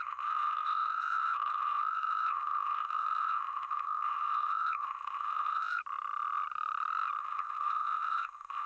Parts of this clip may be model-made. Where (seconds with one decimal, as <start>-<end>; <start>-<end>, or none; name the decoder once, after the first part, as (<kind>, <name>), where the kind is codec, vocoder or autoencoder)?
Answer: 0.0-5.8 (codec, ZipCodec); 7.2-8.7